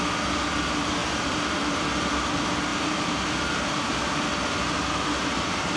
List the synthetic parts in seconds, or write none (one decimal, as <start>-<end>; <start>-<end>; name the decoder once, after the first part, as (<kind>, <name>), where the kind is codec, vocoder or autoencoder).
1.0-1.8 (vocoder, BigVGAN v2); 2.7-4.3